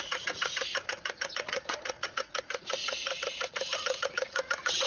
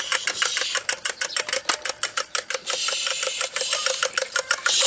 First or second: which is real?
second